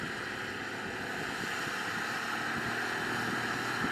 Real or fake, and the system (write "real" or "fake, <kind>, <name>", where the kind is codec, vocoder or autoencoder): real